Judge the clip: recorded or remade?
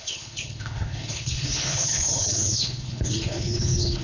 remade